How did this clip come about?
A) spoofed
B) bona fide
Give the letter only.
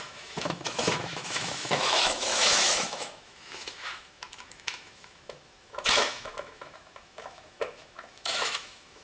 A